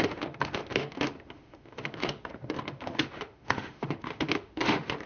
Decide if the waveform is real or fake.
fake